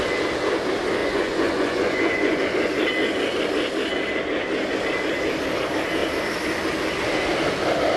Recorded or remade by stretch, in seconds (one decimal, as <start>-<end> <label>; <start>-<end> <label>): 0.0-1.0 recorded; 1.0-2.4 remade; 2.4-8.0 recorded